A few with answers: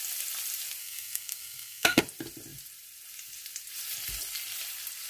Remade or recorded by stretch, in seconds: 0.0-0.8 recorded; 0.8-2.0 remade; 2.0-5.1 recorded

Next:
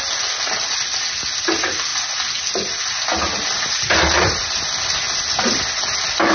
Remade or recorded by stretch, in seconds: 0.0-6.3 recorded

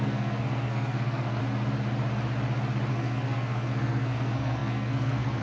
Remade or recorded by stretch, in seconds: 0.0-1.4 remade; 1.4-2.9 recorded; 2.9-5.4 remade

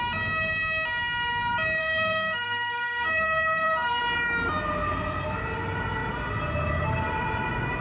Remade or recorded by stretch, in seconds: 0.0-1.8 recorded; 1.8-4.0 remade; 4.0-7.8 recorded